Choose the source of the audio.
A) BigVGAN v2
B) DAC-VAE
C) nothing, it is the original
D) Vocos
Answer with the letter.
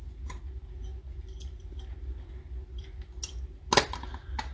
C